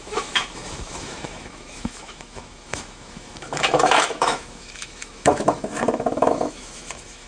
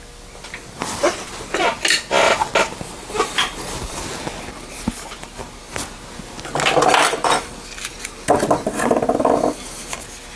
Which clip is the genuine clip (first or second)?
second